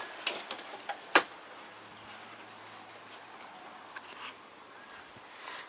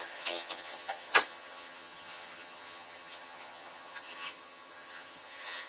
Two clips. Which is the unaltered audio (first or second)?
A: first